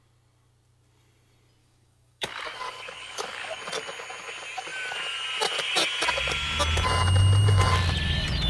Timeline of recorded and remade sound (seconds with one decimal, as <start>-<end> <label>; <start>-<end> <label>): 0.0-1.6 recorded; 1.6-3.6 remade; 3.6-8.5 recorded